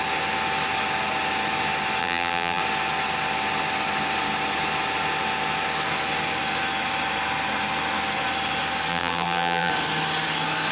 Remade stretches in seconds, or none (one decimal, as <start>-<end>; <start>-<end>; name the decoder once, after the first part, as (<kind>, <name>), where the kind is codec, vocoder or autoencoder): 2.0-2.6 (vocoder, BigVGAN v2); 8.9-9.7